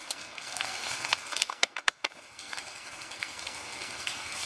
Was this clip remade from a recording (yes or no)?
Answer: yes